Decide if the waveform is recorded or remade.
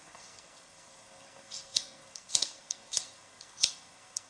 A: remade